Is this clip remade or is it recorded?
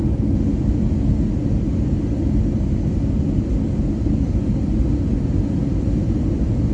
recorded